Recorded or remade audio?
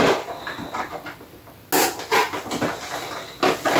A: recorded